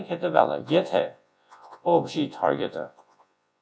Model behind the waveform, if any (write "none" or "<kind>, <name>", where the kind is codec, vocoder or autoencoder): vocoder, Vocos